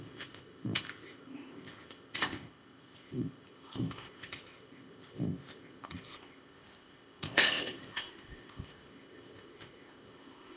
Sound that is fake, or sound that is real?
fake